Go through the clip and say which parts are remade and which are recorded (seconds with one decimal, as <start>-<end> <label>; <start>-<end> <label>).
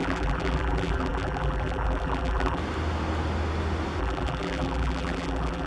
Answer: 0.0-2.6 remade; 2.6-4.0 recorded; 4.0-5.7 remade